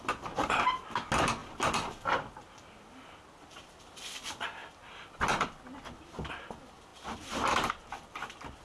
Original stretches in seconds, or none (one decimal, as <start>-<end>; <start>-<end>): 0.0-8.6